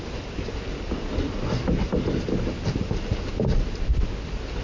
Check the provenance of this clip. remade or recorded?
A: recorded